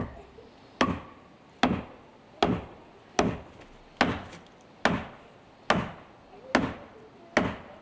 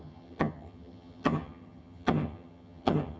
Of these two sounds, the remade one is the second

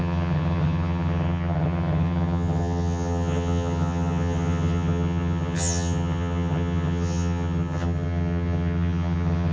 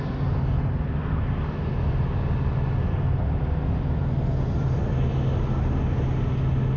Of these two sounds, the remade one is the first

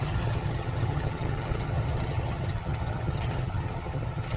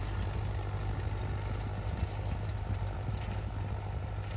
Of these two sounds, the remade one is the first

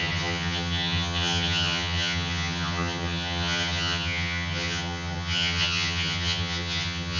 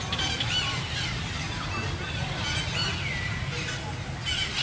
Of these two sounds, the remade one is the first